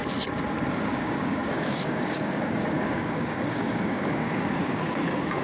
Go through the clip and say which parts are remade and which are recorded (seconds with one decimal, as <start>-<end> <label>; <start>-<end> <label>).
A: 0.0-0.7 recorded; 0.7-5.4 remade